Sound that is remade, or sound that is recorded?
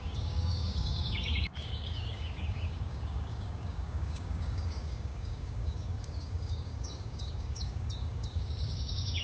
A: remade